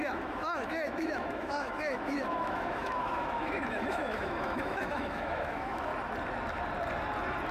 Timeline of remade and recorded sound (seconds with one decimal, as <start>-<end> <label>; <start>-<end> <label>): 0.0-5.9 remade; 5.9-7.5 recorded